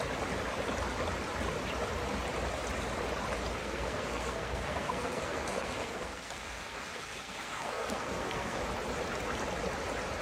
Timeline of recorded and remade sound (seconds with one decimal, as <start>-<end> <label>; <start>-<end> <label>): 0.0-3.6 recorded; 3.6-8.6 remade; 8.6-10.2 recorded